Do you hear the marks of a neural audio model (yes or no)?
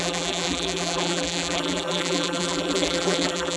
yes